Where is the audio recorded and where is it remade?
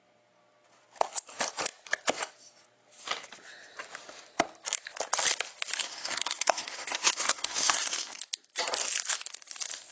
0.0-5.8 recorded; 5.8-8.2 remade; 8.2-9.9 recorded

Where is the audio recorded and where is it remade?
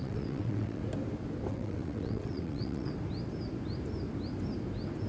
0.0-0.8 remade; 0.8-1.5 recorded; 1.5-2.9 remade; 2.9-5.1 recorded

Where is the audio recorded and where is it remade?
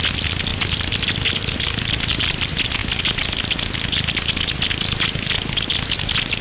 0.0-6.4 recorded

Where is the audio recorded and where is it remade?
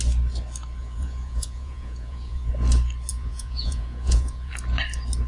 0.0-0.8 recorded; 0.8-2.5 remade; 2.5-3.1 recorded; 3.1-4.5 remade; 4.5-5.3 recorded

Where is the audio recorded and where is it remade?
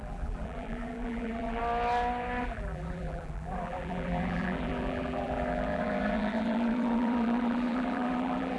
0.0-1.6 remade; 1.6-2.4 recorded; 2.4-8.6 remade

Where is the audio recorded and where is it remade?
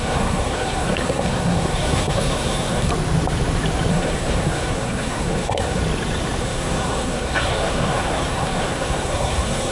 0.0-2.9 remade; 2.9-3.9 recorded; 3.9-5.8 remade; 5.8-6.4 recorded; 6.4-9.7 remade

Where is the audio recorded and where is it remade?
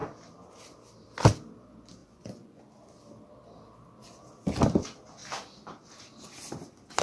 0.0-2.0 recorded; 2.0-2.6 remade; 2.6-7.0 recorded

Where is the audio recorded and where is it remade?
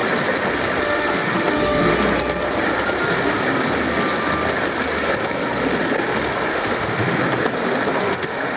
0.0-0.8 recorded; 0.8-1.9 remade; 1.9-6.5 recorded; 6.5-7.2 remade; 7.2-8.0 recorded; 8.0-8.6 remade